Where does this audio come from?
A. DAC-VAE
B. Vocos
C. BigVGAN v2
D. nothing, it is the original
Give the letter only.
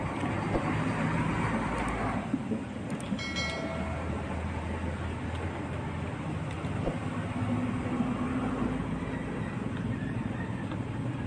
D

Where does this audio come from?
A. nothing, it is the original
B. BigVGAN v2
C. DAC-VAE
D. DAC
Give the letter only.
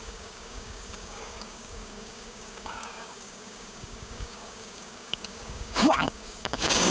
D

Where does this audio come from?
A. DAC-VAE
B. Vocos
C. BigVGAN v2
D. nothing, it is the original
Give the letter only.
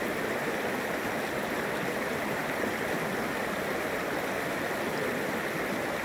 D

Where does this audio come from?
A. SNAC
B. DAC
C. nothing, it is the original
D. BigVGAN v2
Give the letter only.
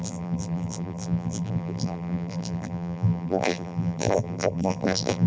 D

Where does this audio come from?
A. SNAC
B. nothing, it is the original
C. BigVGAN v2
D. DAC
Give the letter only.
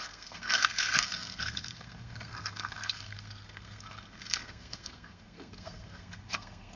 A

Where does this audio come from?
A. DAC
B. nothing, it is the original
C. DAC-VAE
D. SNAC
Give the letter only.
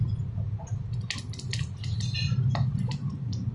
B